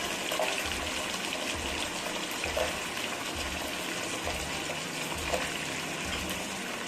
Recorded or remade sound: recorded